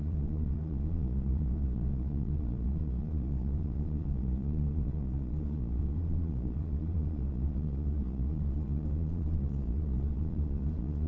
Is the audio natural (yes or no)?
no